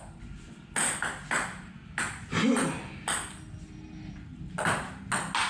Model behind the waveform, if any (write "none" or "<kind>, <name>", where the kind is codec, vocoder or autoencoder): none